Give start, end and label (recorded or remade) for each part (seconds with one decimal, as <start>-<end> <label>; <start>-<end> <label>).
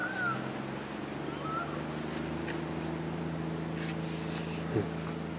0.0-5.4 recorded